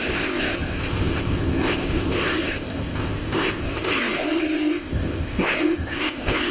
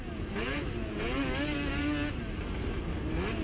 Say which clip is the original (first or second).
second